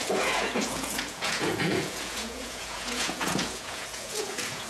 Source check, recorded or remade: remade